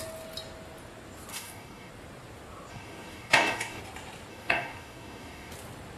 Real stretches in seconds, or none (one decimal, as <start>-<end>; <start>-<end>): 0.0-1.3; 1.9-2.7; 3.8-4.3; 5.5-6.0